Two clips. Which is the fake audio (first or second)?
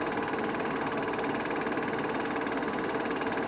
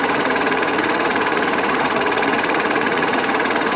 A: second